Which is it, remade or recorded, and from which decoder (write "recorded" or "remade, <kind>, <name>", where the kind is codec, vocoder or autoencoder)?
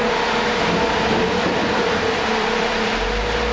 remade, vocoder, BigVGAN v2